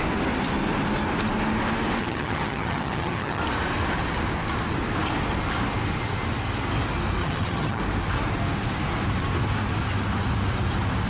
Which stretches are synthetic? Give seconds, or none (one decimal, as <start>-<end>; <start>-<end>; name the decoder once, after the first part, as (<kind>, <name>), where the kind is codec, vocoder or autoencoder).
2.0-3.4 (vocoder, HiFi-GAN); 7.2-7.8